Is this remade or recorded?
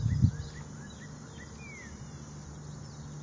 recorded